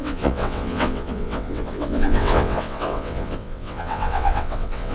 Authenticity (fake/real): fake